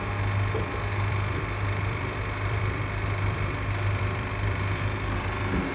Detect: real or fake fake